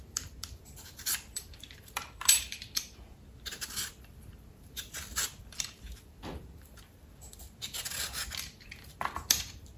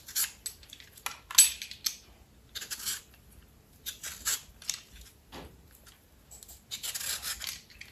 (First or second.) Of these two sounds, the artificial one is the first